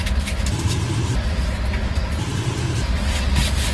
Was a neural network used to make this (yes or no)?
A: no